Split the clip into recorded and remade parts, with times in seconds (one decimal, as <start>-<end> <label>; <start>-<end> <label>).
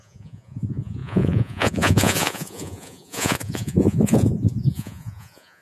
0.0-5.6 remade